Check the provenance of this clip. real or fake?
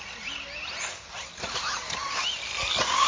real